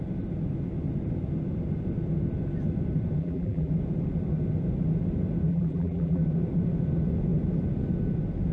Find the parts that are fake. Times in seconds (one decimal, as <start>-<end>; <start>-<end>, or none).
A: 3.2-3.7; 5.5-6.2